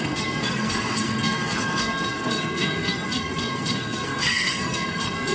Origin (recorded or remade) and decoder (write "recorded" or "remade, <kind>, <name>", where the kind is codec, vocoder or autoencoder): remade, codec, SNAC